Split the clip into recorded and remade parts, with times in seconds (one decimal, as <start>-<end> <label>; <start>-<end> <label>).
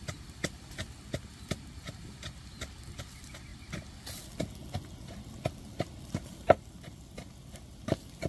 0.0-8.3 recorded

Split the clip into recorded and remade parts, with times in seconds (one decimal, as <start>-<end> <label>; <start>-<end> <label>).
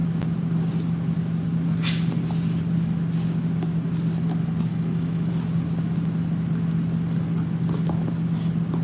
0.0-4.7 recorded; 4.7-5.3 remade; 5.3-8.8 recorded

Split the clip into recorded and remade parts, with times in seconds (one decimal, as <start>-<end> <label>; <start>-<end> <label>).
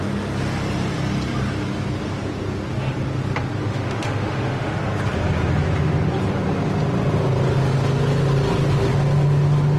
0.0-3.6 recorded; 3.6-4.8 remade; 4.8-9.8 recorded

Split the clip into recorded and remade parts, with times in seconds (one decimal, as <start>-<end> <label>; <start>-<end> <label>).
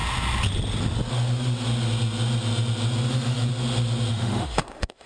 0.0-3.1 recorded; 3.1-3.5 remade; 3.5-4.1 recorded; 4.1-5.1 remade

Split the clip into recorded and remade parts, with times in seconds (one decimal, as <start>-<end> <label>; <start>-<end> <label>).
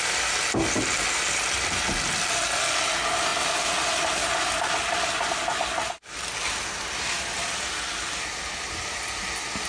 0.0-9.7 recorded